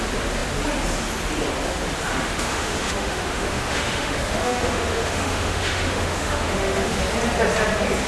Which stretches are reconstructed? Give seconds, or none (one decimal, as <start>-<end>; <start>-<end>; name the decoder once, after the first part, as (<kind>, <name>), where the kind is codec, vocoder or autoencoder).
2.1-7.0 (autoencoder, DAC-VAE)